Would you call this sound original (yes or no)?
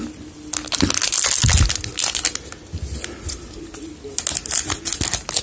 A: yes